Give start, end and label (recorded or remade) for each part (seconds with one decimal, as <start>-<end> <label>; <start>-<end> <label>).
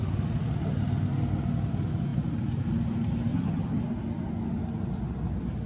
0.0-3.3 recorded; 3.3-3.8 remade; 3.8-5.7 recorded